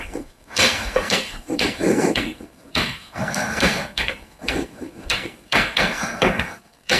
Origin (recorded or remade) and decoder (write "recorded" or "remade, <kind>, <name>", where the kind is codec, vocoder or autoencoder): remade, codec, SNAC